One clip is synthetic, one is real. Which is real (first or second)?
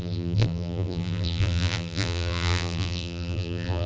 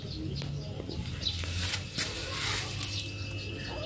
second